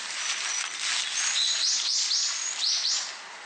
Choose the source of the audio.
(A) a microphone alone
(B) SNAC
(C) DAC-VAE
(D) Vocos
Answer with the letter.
A